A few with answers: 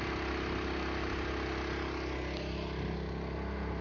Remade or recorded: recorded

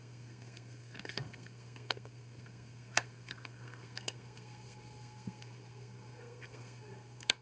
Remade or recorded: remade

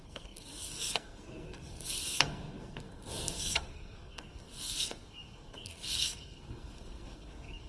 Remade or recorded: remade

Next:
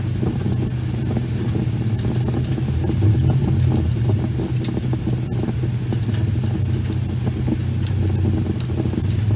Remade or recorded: recorded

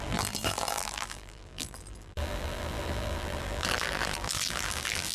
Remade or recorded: remade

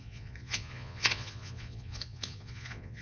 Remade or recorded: remade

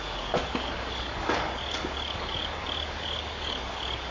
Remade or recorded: remade